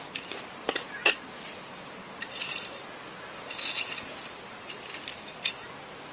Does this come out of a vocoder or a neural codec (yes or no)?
no